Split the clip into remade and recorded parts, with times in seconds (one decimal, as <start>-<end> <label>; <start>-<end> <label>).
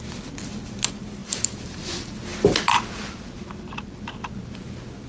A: 0.0-1.2 recorded; 1.2-1.8 remade; 1.8-5.1 recorded